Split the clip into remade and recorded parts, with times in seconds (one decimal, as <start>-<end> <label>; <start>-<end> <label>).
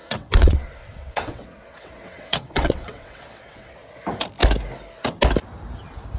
0.0-3.7 remade; 3.7-6.2 recorded